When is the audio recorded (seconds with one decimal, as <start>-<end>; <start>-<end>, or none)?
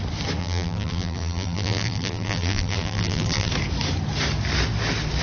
0.0-0.4; 3.5-5.2